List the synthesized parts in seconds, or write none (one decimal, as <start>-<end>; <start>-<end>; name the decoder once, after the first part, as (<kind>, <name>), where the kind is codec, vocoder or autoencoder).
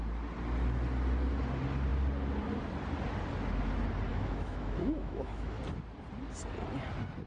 4.1-5.6 (autoencoder, DAC-VAE)